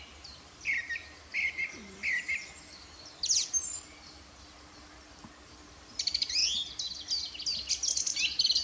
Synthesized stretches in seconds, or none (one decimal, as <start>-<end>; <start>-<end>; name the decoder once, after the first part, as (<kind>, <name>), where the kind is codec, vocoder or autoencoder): none